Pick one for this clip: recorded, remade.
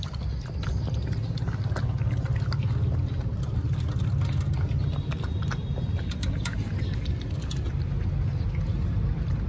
recorded